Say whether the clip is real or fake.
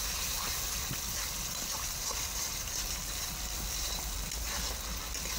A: real